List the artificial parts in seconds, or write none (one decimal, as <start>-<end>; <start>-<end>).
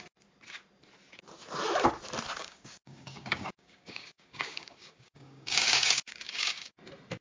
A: 2.4-6.7